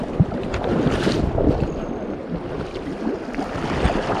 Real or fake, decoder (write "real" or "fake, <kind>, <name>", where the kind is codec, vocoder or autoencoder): real